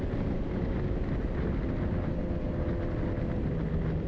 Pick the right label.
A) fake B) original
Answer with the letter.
B